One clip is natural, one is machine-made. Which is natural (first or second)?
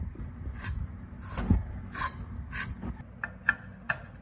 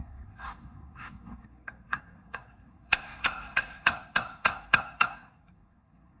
first